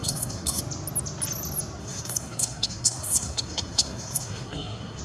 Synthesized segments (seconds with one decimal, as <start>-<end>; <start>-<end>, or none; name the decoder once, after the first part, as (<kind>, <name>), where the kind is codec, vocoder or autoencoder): 0.0-0.6 (codec, SNAC); 1.8-5.0